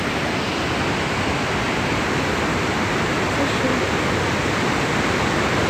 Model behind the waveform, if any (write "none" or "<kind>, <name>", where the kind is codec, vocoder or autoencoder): none